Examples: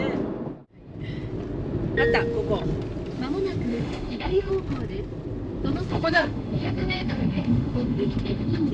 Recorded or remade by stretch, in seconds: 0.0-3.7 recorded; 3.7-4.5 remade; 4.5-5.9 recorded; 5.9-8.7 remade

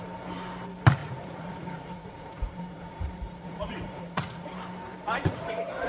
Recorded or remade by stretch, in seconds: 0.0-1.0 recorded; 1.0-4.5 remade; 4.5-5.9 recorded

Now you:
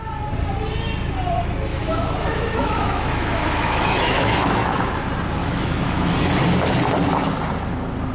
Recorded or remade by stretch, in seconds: 0.0-1.7 recorded; 1.7-4.9 remade; 4.9-5.4 recorded; 5.4-6.1 remade; 6.1-8.1 recorded